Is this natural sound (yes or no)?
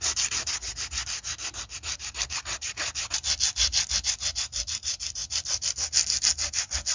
yes